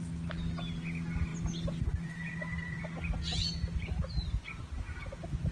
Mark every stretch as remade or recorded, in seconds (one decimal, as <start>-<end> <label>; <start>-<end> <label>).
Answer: 0.0-5.5 recorded